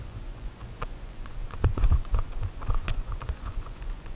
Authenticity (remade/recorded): remade